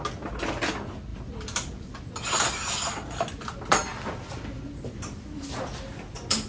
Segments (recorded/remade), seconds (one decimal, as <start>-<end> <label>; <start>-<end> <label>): 0.0-1.1 recorded; 1.1-5.0 remade; 5.0-6.5 recorded

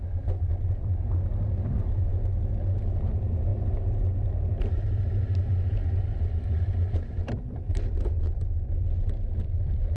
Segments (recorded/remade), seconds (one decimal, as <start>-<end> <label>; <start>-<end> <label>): 0.0-10.0 recorded

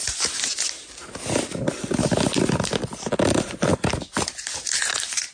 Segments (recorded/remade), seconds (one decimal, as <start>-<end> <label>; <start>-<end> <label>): 0.0-5.3 recorded

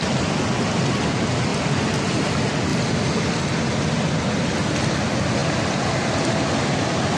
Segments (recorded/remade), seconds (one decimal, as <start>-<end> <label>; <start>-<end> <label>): 0.0-1.5 recorded; 1.5-2.3 remade; 2.3-7.2 recorded

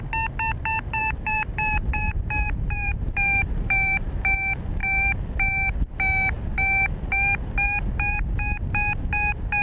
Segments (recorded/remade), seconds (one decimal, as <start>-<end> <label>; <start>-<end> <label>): 0.0-1.0 recorded; 1.0-4.1 remade; 4.1-9.6 recorded

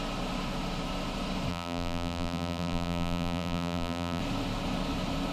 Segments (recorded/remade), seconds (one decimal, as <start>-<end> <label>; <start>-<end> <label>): 0.0-1.5 recorded; 1.5-4.2 remade; 4.2-5.3 recorded

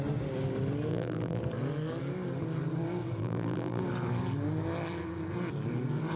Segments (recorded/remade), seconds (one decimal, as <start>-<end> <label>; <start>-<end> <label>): 0.0-0.9 recorded; 0.9-1.4 remade; 1.4-3.2 recorded; 3.2-3.8 remade; 3.8-6.2 recorded

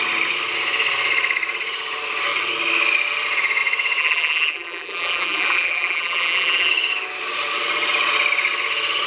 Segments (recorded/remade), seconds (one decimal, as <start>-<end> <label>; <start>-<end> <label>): 0.0-4.0 recorded; 4.0-6.7 remade; 6.7-9.1 recorded